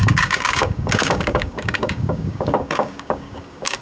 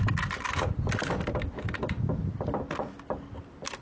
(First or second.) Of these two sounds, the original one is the second